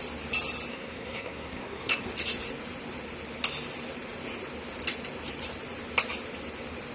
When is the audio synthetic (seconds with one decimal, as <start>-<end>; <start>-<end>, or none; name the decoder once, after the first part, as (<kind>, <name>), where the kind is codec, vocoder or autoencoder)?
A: 0.7-2.0 (codec, SNAC)